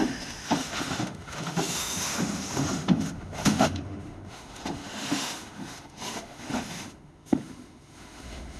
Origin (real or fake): fake